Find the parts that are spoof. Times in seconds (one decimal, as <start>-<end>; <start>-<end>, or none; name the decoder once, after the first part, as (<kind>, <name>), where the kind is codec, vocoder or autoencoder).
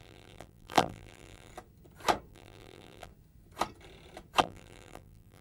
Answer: 0.0-1.5 (vocoder, BigVGAN v2); 2.3-3.1; 4.4-5.4